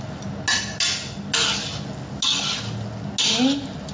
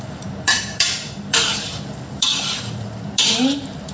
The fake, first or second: second